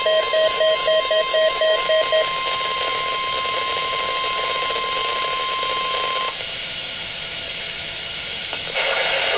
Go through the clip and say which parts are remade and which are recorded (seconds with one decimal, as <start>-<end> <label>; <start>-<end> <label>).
0.0-1.8 remade; 1.8-6.4 recorded; 6.4-9.4 remade

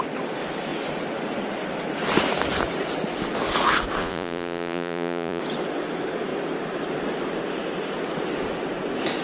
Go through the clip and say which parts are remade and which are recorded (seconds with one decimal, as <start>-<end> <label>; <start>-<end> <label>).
0.0-4.0 recorded; 4.0-5.4 remade; 5.4-9.2 recorded

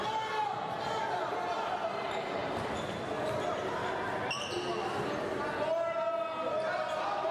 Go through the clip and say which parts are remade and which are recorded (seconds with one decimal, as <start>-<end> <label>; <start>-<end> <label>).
0.0-7.3 recorded

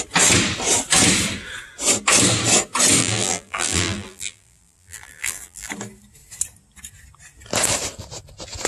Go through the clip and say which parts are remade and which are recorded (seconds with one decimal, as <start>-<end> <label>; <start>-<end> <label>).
0.0-3.0 recorded; 3.0-5.7 remade; 5.7-8.7 recorded